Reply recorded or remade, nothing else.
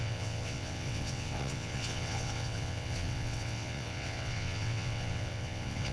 remade